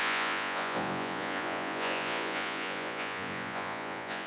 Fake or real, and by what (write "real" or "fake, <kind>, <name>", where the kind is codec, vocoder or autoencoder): fake, vocoder, Vocos